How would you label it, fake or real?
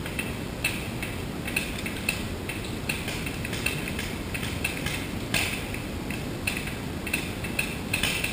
real